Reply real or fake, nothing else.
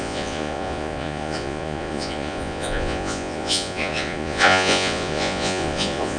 fake